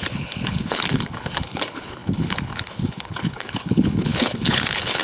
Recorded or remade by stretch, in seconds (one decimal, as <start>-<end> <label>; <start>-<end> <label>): 0.0-5.0 remade